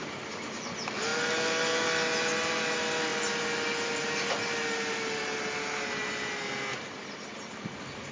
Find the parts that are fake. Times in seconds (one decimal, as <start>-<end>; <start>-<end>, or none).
none